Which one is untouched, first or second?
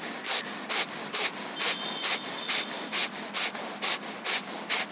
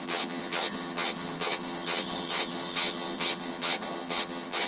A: first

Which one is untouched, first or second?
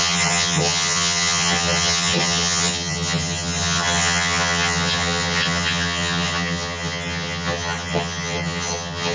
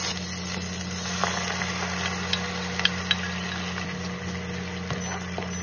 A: second